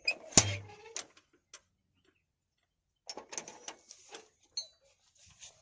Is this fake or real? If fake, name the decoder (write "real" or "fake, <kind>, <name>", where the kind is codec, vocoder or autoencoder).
real